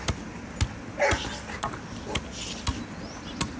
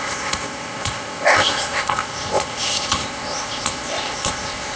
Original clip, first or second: first